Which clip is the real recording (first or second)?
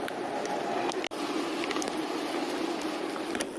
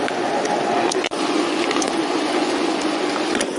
first